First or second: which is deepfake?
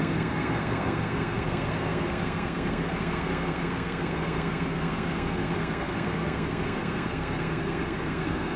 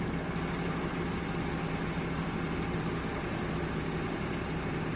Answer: first